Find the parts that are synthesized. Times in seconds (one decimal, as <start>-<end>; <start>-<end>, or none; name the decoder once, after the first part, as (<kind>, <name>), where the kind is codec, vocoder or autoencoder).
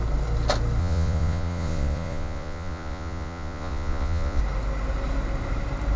0.8-4.4 (vocoder, Vocos)